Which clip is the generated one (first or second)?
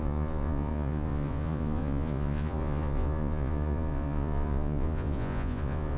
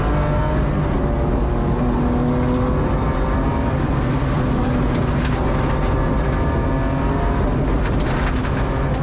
first